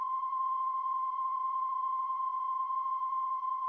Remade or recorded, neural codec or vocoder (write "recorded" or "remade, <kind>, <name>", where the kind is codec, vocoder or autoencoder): remade, vocoder, Vocos